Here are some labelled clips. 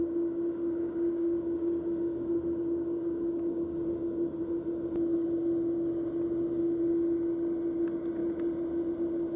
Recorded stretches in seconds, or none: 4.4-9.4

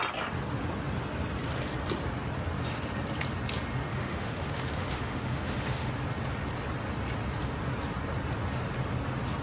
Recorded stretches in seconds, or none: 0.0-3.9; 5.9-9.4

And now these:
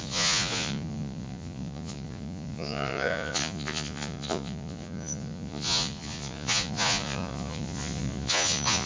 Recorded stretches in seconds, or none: none

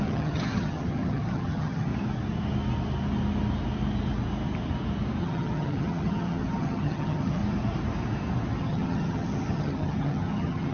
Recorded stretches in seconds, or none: 1.9-5.2; 7.4-8.6

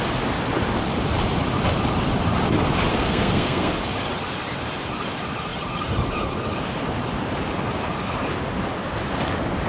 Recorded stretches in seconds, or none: 0.0-2.9; 3.7-9.7

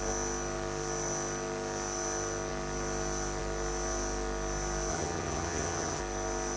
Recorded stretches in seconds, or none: 0.0-4.9; 6.0-6.6